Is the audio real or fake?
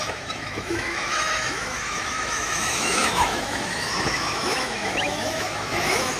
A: fake